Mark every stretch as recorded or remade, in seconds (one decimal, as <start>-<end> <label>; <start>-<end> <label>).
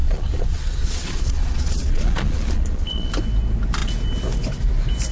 0.0-3.1 remade; 3.1-5.1 recorded